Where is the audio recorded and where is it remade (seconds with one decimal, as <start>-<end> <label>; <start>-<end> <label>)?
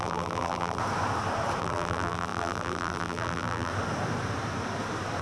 0.0-0.8 remade; 0.8-1.6 recorded; 1.6-3.7 remade; 3.7-5.2 recorded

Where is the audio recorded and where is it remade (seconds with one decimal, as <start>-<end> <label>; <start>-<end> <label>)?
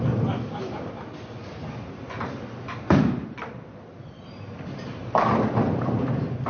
0.0-6.5 recorded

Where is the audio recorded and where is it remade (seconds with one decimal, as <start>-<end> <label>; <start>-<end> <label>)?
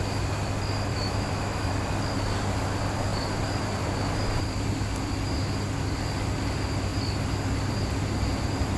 0.0-0.9 recorded; 0.9-1.7 remade; 1.7-8.8 recorded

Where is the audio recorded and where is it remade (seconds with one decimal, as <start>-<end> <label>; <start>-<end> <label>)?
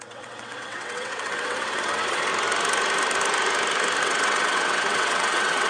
0.0-2.3 remade; 2.3-4.0 recorded; 4.0-5.7 remade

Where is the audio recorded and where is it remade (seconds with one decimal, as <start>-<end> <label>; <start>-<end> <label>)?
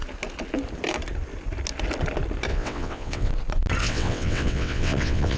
0.0-2.5 recorded; 2.5-3.3 remade; 3.3-3.8 recorded; 3.8-5.4 remade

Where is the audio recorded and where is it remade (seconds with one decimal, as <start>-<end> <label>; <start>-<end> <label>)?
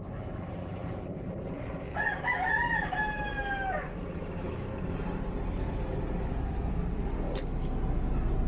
0.0-3.3 remade; 3.3-3.9 recorded; 3.9-6.6 remade; 6.6-8.5 recorded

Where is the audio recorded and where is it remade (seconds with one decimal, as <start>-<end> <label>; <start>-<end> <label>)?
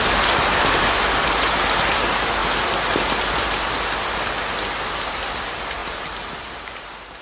0.0-7.2 recorded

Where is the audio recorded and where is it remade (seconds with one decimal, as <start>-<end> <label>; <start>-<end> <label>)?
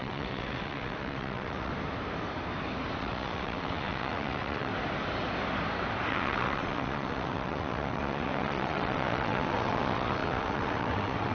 0.0-1.7 remade; 1.7-3.0 recorded; 3.0-4.7 remade; 4.7-6.1 recorded; 6.1-11.3 remade